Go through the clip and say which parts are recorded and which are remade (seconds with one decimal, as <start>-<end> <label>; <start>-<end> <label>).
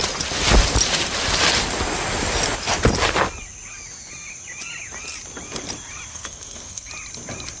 0.0-6.1 recorded; 6.1-6.9 remade; 6.9-7.6 recorded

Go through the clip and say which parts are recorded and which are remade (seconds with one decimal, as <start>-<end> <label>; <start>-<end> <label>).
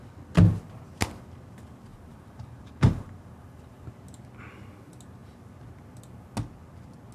0.0-1.9 recorded; 1.9-3.8 remade; 3.8-7.1 recorded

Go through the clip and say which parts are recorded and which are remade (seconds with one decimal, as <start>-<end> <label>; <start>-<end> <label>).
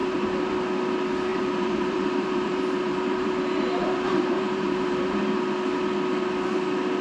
0.0-0.5 remade; 0.5-1.3 recorded; 1.3-5.4 remade; 5.4-7.0 recorded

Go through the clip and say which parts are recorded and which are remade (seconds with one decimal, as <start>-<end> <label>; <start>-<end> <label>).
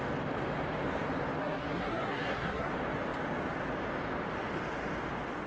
0.0-1.4 recorded; 1.4-2.7 remade; 2.7-5.5 recorded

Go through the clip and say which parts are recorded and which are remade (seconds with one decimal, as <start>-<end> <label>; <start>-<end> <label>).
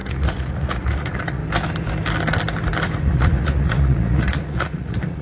0.0-1.4 remade; 1.4-3.0 recorded; 3.0-5.2 remade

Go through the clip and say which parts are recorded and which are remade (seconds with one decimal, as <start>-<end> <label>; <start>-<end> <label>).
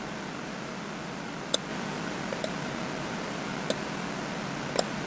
0.0-5.1 recorded